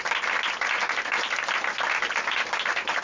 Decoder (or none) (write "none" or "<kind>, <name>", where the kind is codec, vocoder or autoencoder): none